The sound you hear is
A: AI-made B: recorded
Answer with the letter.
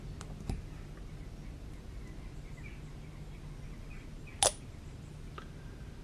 B